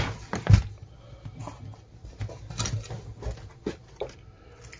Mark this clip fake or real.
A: real